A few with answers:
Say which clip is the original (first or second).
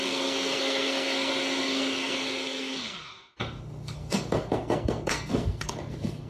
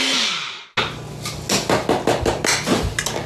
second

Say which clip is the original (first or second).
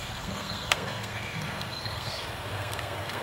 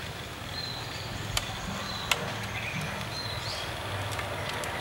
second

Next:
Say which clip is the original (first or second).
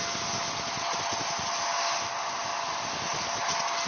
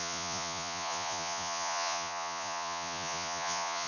first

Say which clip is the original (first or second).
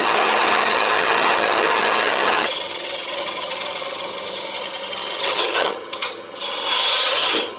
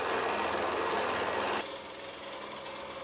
second